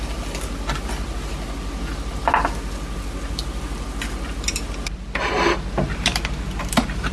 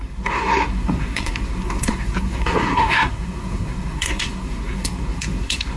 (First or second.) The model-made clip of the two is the second